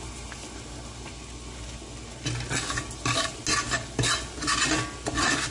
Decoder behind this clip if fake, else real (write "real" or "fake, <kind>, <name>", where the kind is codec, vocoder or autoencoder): real